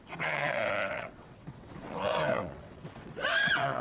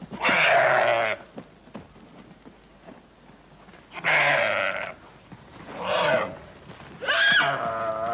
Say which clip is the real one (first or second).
second